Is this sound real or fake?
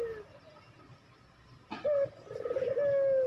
real